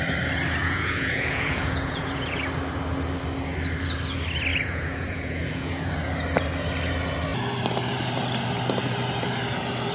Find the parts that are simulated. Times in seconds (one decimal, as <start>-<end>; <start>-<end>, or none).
0.6-2.4; 4.5-5.9